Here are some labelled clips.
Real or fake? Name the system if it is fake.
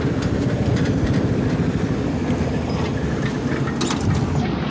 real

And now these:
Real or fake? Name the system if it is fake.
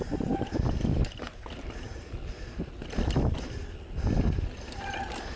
real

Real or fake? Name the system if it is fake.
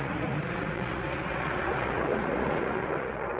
fake, vocoder, Vocos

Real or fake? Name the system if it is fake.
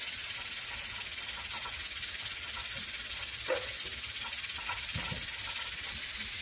real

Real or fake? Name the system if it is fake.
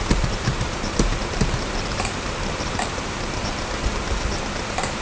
fake, vocoder, BigVGAN v2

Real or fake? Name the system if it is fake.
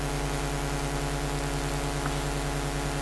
real